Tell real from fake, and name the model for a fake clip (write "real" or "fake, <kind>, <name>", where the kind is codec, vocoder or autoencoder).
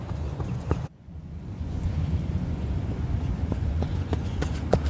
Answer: fake, vocoder, Vocos